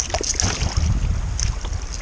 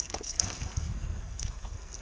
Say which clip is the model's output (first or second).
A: second